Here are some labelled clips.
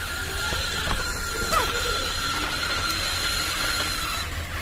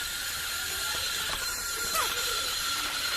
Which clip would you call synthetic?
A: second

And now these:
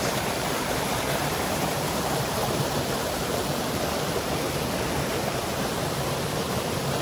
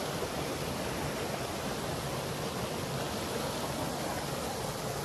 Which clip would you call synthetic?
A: first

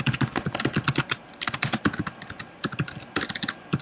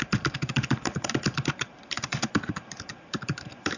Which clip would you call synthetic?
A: second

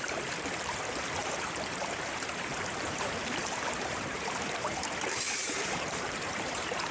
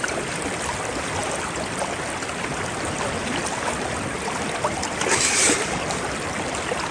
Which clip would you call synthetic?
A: first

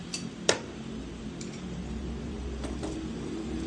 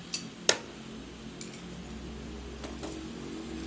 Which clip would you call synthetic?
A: first